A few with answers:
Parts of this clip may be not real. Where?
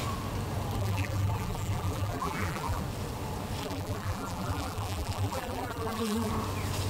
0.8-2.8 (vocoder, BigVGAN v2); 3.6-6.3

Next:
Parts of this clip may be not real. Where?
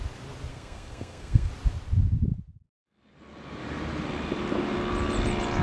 0.5-1.5 (codec, SNAC)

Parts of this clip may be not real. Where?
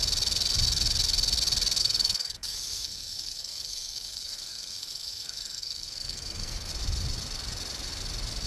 1.8-6.7 (codec, SNAC)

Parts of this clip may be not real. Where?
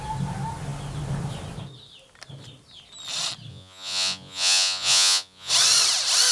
3.5-5.5 (vocoder, Vocos)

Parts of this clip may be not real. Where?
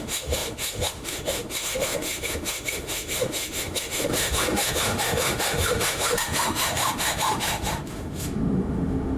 0.0-9.2 (autoencoder, DAC-VAE)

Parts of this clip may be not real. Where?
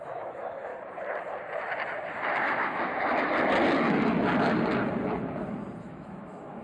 0.0-0.7 (autoencoder, DAC-VAE); 2.1-2.9; 5.8-6.6